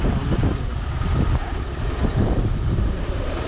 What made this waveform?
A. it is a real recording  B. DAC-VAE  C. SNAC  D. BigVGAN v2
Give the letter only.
D